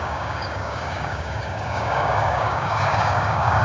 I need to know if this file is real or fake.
fake